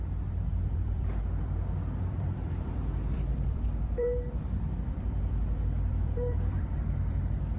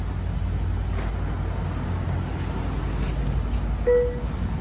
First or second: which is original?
second